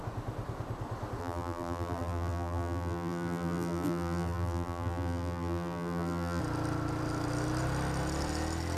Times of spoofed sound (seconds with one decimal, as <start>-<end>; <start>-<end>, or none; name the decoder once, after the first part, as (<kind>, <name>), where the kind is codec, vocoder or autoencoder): 1.2-6.4 (vocoder, BigVGAN v2)